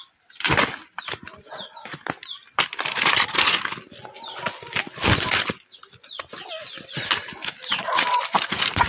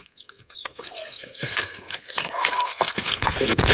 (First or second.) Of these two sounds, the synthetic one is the second